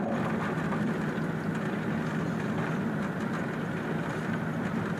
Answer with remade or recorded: recorded